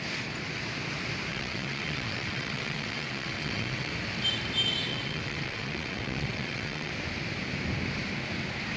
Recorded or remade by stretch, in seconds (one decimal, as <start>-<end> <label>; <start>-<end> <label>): 0.0-1.3 recorded; 1.3-3.9 remade; 3.9-4.9 recorded; 4.9-6.9 remade; 6.9-8.8 recorded